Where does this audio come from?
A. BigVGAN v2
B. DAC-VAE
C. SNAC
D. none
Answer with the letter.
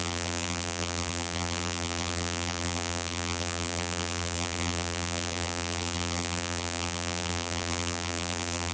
A